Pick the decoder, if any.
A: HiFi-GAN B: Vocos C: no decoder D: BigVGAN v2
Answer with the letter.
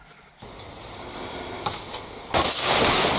C